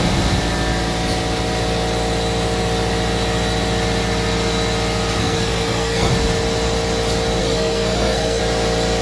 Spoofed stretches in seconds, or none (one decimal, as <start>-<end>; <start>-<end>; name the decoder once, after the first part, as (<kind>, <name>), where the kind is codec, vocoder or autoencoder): 5.2-6.1 (codec, SNAC); 7.4-8.4

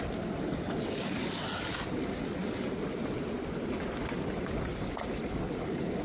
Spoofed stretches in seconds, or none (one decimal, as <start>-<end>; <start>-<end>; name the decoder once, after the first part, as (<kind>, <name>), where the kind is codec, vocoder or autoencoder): none

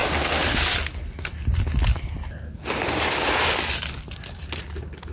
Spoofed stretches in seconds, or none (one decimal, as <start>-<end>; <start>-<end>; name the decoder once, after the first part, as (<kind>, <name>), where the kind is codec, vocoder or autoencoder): none

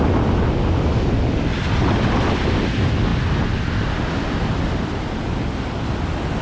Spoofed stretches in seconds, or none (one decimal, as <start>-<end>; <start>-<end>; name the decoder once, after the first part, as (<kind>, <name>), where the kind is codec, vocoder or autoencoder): none

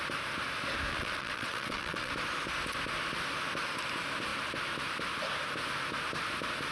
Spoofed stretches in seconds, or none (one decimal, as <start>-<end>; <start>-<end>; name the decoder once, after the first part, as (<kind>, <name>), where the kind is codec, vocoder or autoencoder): 0.9-2.1 (vocoder, WaveNeXt)